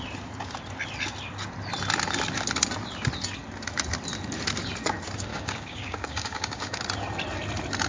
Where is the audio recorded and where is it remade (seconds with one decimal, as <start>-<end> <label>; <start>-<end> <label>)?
0.0-5.3 recorded; 5.3-6.8 remade; 6.8-7.9 recorded

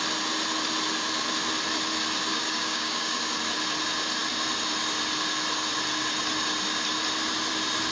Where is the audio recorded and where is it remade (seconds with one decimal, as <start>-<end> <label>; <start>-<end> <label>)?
0.0-2.3 recorded; 2.3-3.2 remade; 3.2-7.9 recorded

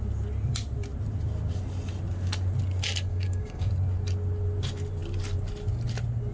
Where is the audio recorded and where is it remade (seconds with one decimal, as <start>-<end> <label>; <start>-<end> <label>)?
0.0-3.1 recorded; 3.1-3.7 remade; 3.7-6.3 recorded

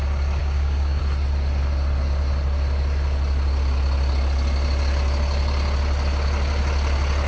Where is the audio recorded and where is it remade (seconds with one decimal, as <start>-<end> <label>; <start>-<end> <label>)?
0.0-0.4 recorded; 0.4-1.0 remade; 1.0-7.3 recorded

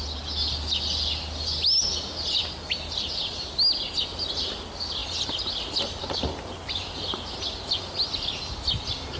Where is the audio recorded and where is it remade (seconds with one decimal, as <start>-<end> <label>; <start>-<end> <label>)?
0.0-9.2 recorded

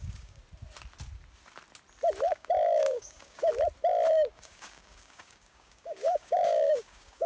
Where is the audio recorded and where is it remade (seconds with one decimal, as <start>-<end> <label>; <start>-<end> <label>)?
0.0-0.4 remade; 0.4-2.3 recorded; 2.3-3.5 remade; 3.5-4.1 recorded; 4.1-7.3 remade

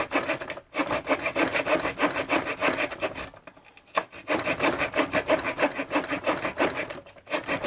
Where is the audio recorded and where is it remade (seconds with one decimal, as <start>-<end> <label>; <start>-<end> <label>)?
0.0-7.7 recorded

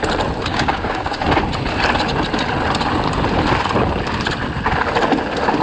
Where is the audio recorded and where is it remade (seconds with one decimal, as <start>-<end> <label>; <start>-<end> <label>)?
0.0-0.5 recorded; 0.5-1.2 remade; 1.2-5.6 recorded